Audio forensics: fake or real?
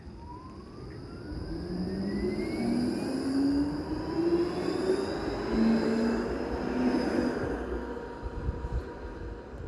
real